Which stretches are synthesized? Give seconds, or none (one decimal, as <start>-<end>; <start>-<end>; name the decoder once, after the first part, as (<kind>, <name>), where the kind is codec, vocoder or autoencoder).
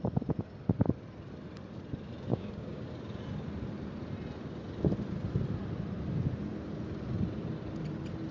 2.3-2.9 (codec, DAC)